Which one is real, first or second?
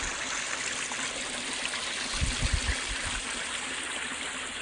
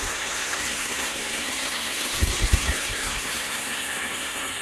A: first